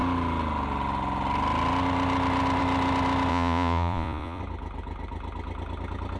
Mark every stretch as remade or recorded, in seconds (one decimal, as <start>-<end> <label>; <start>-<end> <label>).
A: 0.0-3.3 recorded; 3.3-4.4 remade; 4.4-6.2 recorded